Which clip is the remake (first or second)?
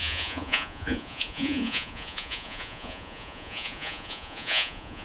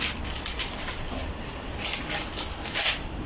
first